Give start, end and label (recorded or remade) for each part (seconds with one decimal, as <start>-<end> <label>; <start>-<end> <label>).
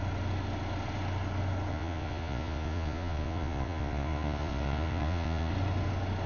0.0-1.7 recorded; 1.7-5.5 remade; 5.5-6.3 recorded